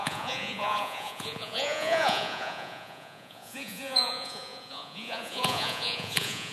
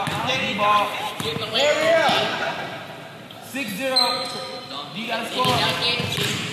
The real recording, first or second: second